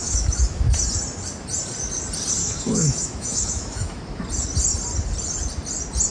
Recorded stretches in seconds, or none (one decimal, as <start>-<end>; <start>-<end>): 0.8-2.4; 4.0-6.1